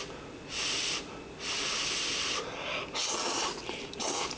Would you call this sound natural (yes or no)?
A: yes